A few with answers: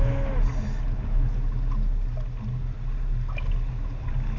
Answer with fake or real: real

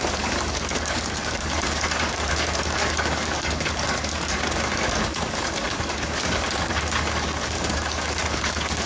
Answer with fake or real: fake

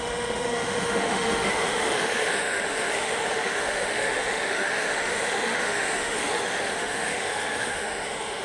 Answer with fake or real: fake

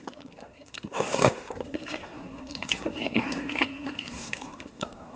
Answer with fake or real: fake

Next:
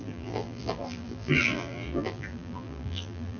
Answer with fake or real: fake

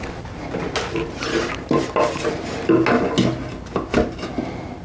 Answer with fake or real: real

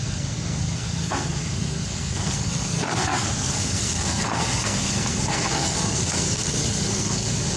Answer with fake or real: fake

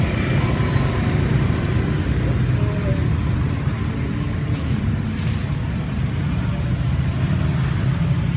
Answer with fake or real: real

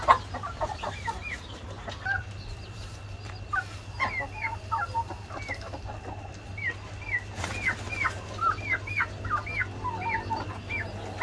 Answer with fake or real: real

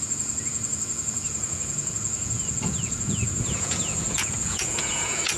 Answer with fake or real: fake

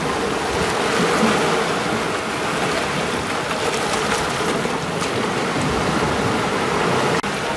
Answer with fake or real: real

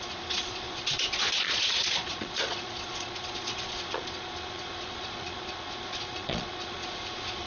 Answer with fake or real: fake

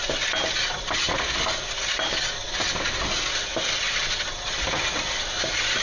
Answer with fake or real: real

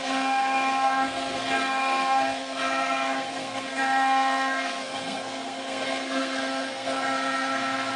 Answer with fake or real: fake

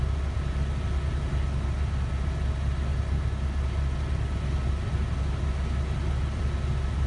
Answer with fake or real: real